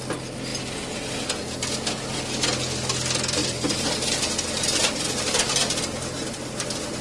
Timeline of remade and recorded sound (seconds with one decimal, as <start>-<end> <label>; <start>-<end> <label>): 0.0-3.4 recorded; 3.4-5.8 remade; 5.8-7.0 recorded